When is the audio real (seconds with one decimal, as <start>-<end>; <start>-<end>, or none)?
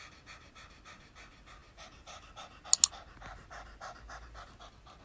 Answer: 0.0-5.0